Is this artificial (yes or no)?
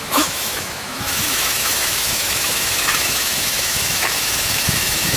yes